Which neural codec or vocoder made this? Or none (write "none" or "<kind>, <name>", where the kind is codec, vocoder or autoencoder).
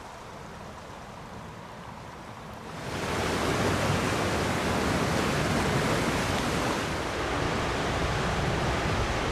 none